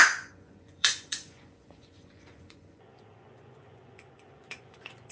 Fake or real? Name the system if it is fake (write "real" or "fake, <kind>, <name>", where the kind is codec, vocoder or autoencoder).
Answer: fake, vocoder, Vocos